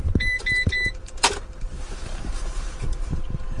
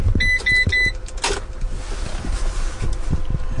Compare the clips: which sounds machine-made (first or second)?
first